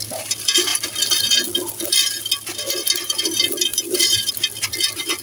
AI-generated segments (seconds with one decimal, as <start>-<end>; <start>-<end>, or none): 3.7-4.3